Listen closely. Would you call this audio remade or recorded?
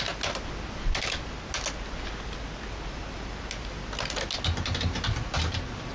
recorded